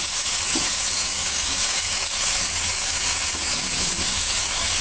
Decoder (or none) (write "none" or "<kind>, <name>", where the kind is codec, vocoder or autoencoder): codec, DAC